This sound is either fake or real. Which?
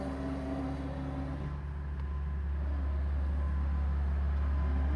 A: real